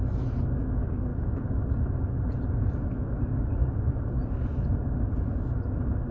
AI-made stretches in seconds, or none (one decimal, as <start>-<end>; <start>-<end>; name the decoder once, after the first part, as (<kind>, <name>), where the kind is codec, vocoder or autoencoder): none